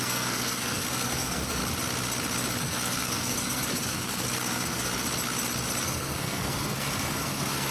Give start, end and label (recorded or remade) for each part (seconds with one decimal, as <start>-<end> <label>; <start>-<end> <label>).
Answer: 0.0-1.6 remade; 1.6-2.6 recorded; 2.6-4.9 remade; 4.9-5.8 recorded; 5.8-7.7 remade